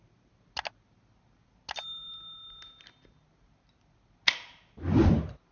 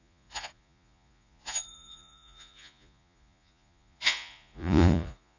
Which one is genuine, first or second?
first